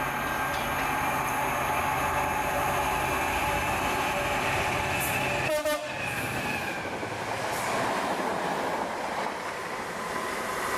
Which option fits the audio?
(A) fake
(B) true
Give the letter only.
B